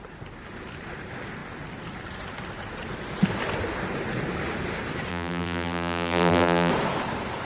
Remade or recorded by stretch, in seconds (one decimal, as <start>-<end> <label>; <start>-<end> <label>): 0.0-5.1 recorded; 5.1-6.7 remade; 6.7-7.4 recorded